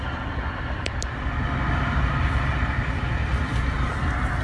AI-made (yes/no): no